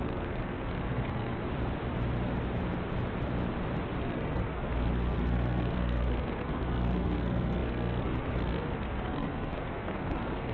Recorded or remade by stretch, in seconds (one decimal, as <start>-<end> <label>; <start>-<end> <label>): 0.0-1.4 remade; 1.4-4.0 recorded; 4.0-10.5 remade